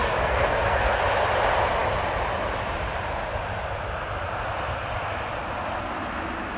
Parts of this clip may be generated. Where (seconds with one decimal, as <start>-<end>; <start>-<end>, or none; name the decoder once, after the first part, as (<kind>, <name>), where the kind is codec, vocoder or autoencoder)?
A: 0.0-1.0 (codec, SNAC)